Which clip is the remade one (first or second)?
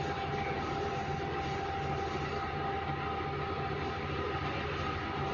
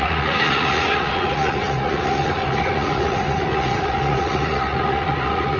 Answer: second